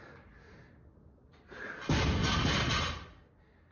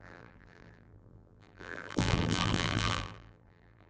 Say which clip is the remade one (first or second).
second